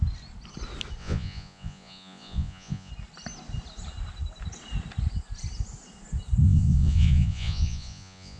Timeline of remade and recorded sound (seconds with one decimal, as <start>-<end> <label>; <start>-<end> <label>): 0.0-1.0 recorded; 1.0-2.9 remade; 2.9-6.4 recorded; 6.4-8.4 remade